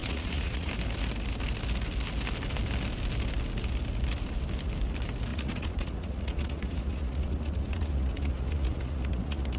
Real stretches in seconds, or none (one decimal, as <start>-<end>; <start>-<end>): 0.7-5.3

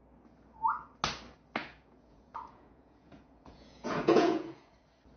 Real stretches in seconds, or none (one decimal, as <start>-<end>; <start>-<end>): 0.0-1.6; 4.7-5.2